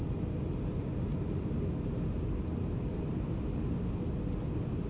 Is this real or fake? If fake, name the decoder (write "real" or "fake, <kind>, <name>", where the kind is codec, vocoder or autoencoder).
real